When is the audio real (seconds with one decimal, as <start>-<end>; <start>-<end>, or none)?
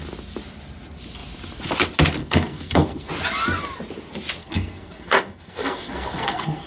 0.0-2.2; 3.1-4.4